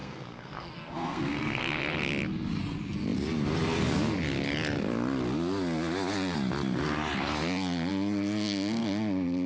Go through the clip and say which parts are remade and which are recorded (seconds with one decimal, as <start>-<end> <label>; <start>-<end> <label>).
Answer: 0.0-1.6 remade; 1.6-9.5 recorded

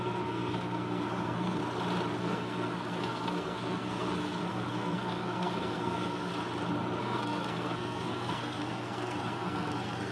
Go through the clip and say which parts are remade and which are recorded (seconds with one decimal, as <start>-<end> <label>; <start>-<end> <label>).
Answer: 0.0-1.6 remade; 1.6-2.2 recorded; 2.2-6.3 remade; 6.3-7.0 recorded; 7.0-10.1 remade

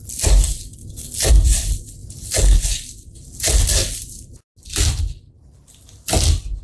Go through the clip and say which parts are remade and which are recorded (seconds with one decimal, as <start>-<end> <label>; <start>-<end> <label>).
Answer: 0.0-6.6 recorded

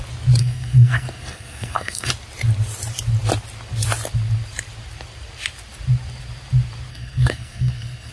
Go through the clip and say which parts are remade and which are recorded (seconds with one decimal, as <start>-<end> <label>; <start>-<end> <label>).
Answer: 0.0-0.4 recorded; 0.4-2.1 remade; 2.1-6.9 recorded; 6.9-8.1 remade

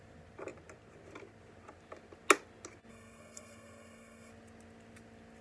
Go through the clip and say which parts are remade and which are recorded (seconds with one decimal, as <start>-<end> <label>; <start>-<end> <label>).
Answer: 0.0-2.9 recorded; 2.9-4.3 remade; 4.3-5.4 recorded

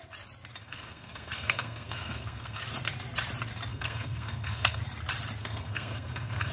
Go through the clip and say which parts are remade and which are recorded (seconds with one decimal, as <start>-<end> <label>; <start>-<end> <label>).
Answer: 0.0-0.6 recorded; 0.6-2.6 remade; 2.6-3.7 recorded; 3.7-4.8 remade; 4.8-5.4 recorded; 5.4-6.5 remade